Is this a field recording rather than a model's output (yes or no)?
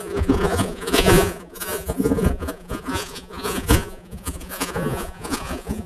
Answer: no